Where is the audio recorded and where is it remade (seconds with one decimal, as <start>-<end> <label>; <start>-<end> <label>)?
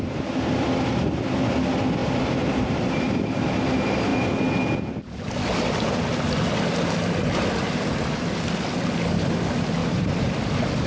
0.0-2.0 recorded; 2.0-3.3 remade; 3.3-9.8 recorded; 9.8-10.3 remade; 10.3-10.9 recorded